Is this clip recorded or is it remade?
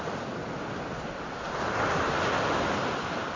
recorded